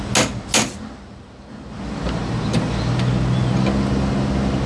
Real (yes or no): yes